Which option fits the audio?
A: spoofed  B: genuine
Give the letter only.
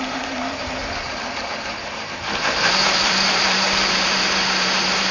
A